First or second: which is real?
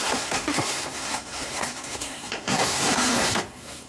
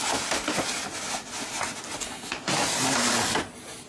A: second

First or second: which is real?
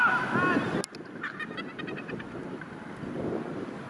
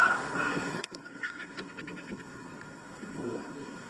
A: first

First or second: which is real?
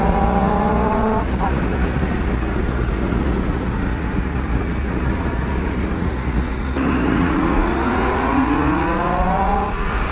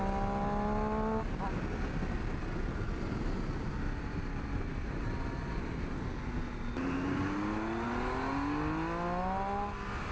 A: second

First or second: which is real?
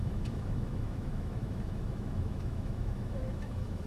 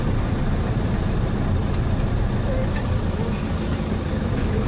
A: second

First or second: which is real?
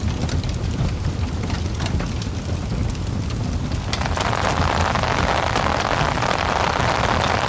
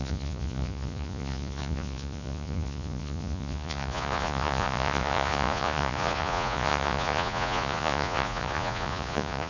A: first